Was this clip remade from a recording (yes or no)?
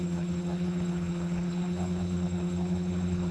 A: yes